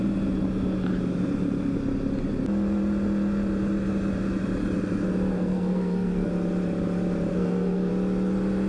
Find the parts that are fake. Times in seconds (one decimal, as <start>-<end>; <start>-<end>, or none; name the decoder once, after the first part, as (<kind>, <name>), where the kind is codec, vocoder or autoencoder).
5.3-6.3 (codec, SNAC); 7.3-7.9

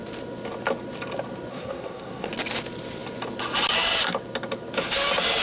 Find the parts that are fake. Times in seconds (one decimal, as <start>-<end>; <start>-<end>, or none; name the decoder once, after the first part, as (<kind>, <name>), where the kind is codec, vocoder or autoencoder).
1.5-2.3 (codec, SNAC)